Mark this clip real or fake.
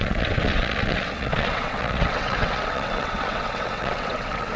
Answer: fake